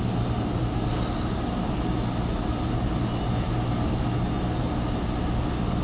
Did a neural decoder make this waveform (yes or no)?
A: no